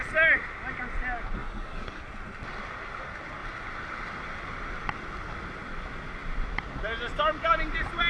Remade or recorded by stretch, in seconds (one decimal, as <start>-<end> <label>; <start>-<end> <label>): 0.0-1.4 recorded; 1.4-2.1 remade; 2.1-8.1 recorded